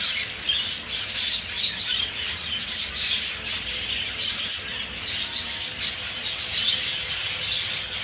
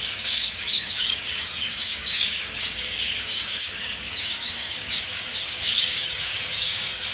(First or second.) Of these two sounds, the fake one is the second